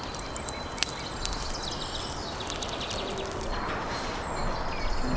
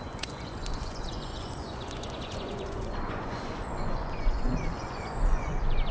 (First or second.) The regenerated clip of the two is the second